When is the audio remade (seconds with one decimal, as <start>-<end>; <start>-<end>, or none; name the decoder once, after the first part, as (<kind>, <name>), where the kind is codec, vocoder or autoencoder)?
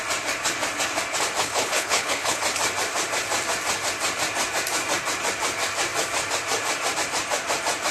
1.4-2.4 (codec, HILCodec)